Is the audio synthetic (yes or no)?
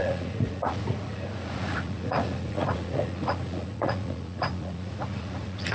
yes